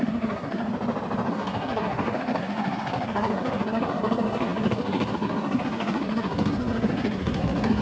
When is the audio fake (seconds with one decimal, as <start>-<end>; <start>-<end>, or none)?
0.0-0.7; 1.3-7.8